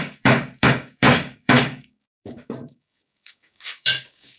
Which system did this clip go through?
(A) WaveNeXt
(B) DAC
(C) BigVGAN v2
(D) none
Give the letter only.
B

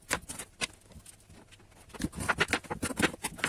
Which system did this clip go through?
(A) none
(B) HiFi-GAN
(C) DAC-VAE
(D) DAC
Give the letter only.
A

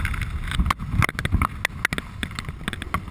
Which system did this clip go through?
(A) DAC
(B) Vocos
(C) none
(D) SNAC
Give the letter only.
C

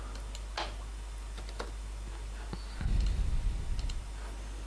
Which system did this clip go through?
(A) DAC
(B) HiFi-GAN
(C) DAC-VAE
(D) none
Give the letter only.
D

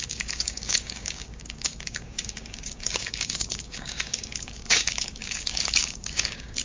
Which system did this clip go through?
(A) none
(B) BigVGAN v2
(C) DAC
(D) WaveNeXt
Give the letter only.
C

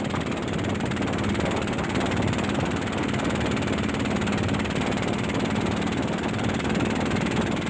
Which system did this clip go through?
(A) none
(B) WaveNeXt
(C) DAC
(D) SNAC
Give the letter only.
A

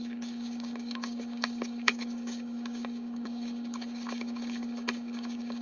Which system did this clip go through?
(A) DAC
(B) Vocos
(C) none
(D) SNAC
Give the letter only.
A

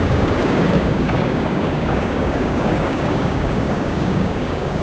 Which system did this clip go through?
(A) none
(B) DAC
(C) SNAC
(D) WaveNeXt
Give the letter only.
B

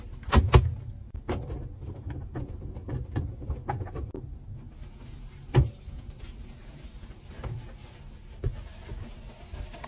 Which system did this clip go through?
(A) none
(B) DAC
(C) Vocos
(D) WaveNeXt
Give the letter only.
A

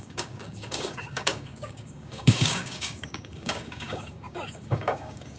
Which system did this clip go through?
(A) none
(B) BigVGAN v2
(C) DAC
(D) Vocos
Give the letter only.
C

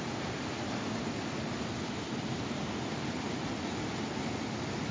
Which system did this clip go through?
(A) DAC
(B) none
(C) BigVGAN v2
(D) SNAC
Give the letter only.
B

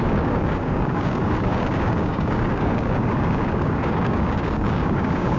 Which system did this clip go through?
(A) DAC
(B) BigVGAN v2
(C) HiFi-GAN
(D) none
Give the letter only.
A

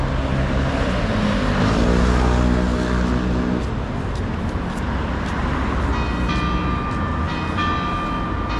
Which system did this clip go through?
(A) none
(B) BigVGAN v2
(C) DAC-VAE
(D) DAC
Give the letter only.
A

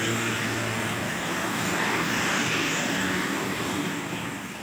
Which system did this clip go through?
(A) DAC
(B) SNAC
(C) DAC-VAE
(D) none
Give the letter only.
A